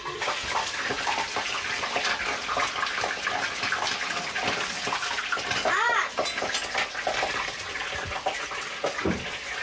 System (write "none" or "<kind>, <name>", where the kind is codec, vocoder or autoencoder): none